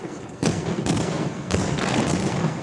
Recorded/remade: remade